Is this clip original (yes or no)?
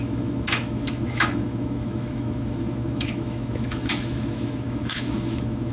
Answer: no